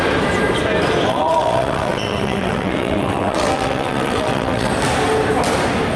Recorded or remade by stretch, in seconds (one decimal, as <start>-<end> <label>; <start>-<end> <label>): 0.0-1.1 recorded; 1.1-4.7 remade; 4.7-6.0 recorded